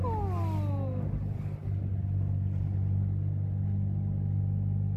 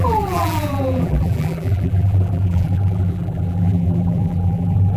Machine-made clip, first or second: second